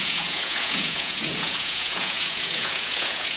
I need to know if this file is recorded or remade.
remade